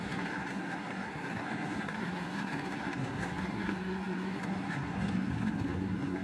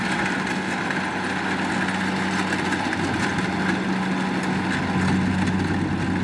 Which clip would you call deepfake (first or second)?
first